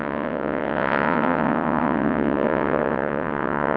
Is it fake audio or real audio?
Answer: fake